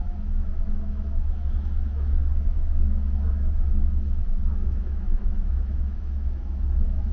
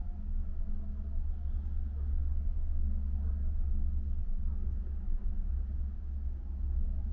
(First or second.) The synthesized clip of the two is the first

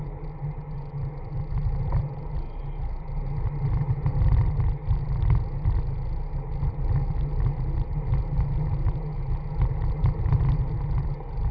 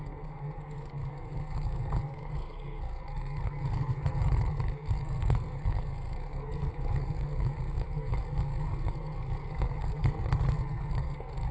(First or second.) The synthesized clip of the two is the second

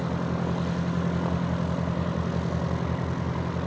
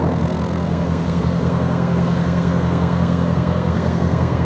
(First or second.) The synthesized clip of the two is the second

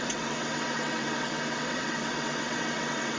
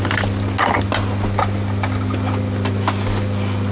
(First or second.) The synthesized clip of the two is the first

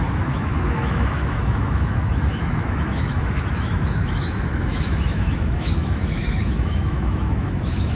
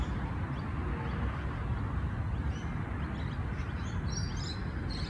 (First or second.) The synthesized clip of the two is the first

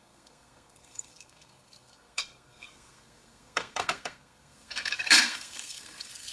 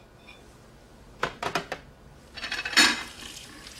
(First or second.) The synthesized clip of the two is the first